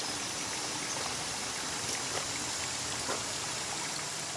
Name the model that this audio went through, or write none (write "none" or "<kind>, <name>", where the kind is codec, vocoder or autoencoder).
vocoder, BigVGAN v2